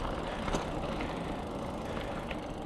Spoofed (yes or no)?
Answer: no